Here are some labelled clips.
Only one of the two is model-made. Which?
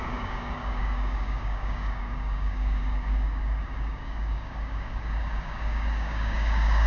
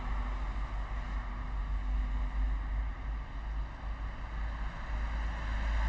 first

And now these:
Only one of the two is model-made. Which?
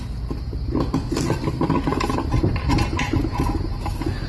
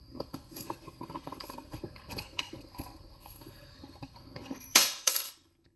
second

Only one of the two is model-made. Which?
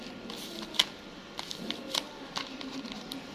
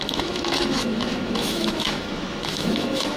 second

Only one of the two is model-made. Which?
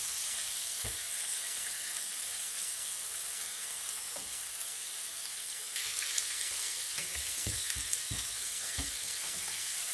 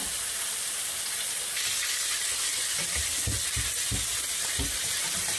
first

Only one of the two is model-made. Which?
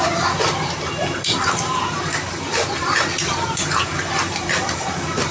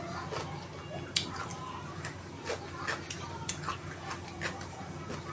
first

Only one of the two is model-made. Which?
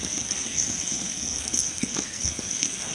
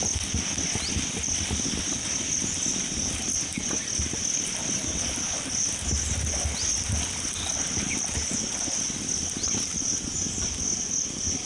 first